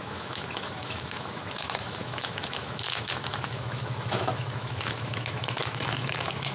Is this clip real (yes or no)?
no